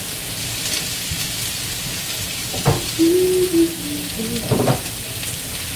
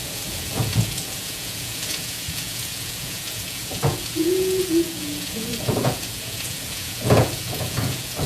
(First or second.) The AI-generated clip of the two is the second